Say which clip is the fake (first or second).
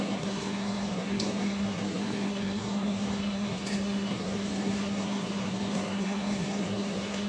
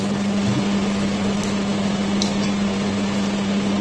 first